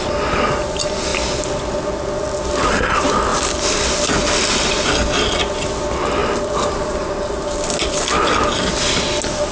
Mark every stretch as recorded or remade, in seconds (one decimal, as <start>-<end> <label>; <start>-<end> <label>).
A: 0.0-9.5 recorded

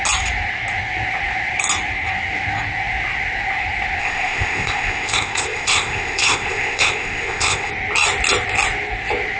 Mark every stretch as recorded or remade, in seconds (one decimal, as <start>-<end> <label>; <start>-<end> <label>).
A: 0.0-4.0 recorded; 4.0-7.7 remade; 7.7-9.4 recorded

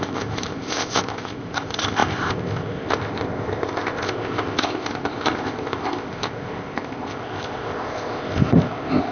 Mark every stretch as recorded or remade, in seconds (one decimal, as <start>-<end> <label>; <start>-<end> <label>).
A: 0.0-9.1 remade